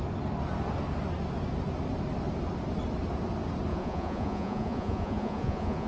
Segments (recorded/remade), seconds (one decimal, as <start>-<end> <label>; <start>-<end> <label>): 0.0-3.7 recorded; 3.7-5.9 remade